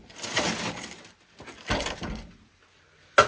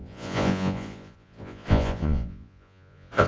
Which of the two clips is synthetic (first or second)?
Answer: second